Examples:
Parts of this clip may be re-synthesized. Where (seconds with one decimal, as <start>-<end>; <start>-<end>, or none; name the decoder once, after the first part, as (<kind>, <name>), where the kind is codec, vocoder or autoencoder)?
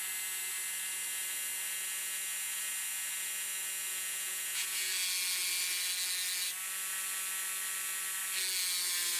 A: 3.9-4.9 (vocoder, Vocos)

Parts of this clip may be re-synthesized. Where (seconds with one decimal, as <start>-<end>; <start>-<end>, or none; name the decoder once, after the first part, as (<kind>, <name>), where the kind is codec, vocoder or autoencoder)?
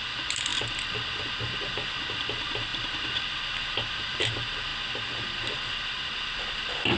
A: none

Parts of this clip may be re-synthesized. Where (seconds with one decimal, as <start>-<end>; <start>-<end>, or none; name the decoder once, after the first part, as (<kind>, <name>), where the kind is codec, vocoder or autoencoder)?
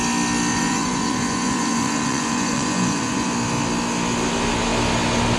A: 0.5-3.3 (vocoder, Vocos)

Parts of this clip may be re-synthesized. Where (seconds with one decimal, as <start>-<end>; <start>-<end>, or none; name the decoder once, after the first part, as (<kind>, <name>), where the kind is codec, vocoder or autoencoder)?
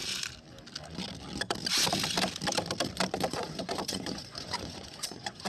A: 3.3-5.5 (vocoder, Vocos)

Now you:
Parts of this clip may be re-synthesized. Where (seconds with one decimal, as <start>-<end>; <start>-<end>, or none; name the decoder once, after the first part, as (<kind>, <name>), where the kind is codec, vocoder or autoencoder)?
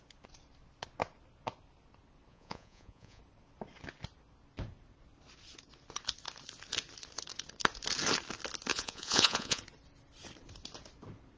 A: 2.3-3.2 (vocoder, Vocos); 8.7-9.6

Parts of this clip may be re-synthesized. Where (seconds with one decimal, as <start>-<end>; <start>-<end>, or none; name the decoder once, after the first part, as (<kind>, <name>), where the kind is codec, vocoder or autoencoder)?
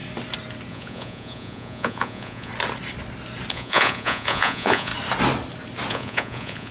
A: 0.7-2.5 (vocoder, Vocos); 3.5-4.9; 5.9-6.7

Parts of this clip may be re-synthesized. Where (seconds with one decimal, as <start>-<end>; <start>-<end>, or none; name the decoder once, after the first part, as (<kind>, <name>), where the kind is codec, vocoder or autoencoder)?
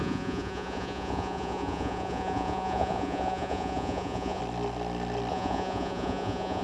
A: 0.0-4.4 (vocoder, Vocos); 5.3-6.6